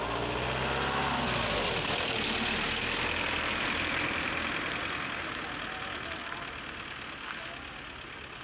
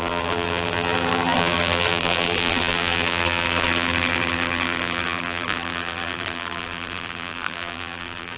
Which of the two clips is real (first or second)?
first